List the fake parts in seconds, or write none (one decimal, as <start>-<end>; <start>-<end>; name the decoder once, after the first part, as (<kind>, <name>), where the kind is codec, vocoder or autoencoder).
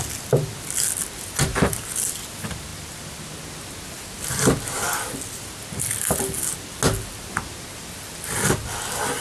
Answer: none